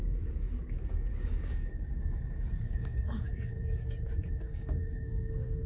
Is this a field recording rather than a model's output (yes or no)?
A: no